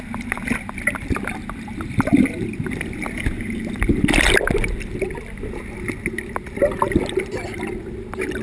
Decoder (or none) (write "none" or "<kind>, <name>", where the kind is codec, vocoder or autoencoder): none